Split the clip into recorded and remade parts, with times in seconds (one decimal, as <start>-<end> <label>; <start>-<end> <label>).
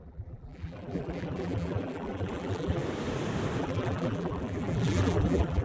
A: 0.0-2.8 remade; 2.8-3.6 recorded; 3.6-5.6 remade